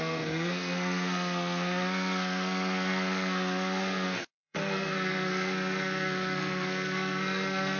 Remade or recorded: remade